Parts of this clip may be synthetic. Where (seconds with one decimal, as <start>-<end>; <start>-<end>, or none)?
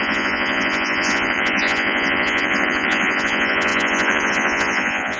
0.0-5.2